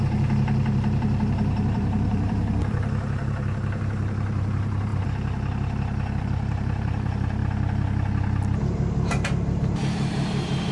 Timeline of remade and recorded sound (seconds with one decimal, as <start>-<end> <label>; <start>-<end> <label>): 0.0-4.9 remade; 4.9-6.2 recorded; 6.2-7.4 remade; 7.4-9.5 recorded; 9.5-10.7 remade